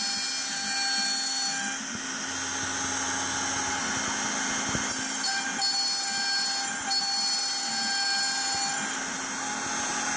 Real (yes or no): yes